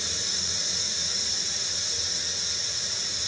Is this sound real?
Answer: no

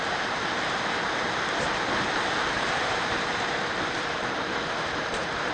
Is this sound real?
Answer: no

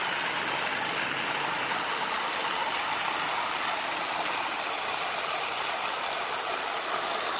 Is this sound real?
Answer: yes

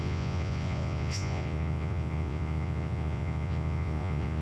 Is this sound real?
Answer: no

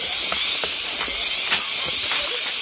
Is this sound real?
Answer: yes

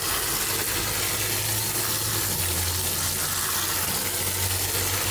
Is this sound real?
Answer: yes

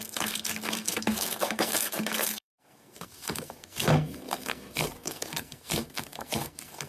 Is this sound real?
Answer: no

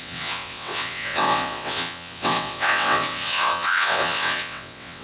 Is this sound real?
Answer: no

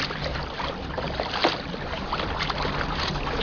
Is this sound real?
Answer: yes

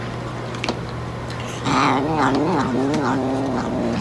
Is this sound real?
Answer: yes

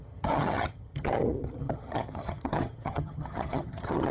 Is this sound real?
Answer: no